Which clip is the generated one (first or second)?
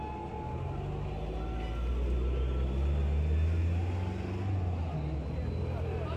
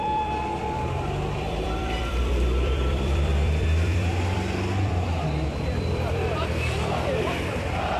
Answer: second